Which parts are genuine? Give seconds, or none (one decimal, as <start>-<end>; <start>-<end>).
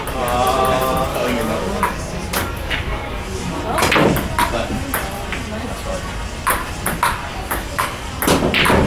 0.0-1.1; 3.6-7.3; 8.1-8.9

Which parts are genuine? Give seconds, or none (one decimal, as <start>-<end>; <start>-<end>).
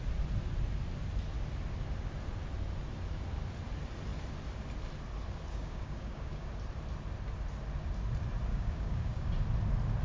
0.0-5.5; 6.5-8.5; 9.3-10.0